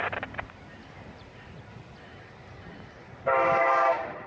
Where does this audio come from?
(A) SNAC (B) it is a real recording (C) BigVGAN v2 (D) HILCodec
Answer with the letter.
C